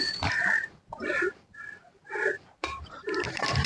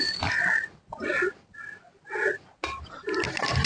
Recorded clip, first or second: second